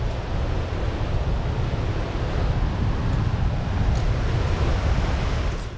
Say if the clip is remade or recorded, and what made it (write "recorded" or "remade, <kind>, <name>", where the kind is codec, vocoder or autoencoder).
recorded